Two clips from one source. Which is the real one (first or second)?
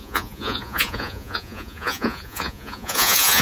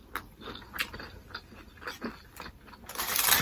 second